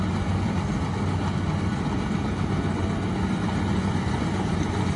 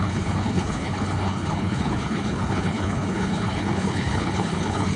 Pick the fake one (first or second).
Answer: second